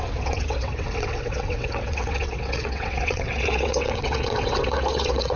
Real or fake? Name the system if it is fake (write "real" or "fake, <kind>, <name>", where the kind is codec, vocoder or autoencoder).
fake, vocoder, WaveNeXt